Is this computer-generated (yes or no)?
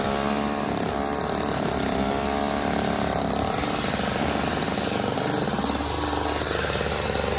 no